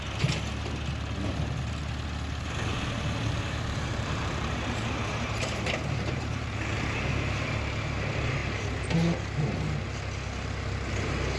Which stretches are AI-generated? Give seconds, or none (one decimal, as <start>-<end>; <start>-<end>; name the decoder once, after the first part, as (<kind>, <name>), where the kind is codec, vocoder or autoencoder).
2.7-7.1 (vocoder, BigVGAN v2)